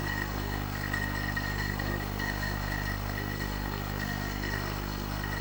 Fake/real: fake